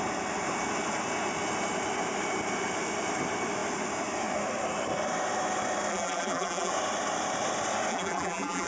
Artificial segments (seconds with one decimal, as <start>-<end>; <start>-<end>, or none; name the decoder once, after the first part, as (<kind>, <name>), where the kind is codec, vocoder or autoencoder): 5.9-6.7 (vocoder, BigVGAN v2); 7.9-8.7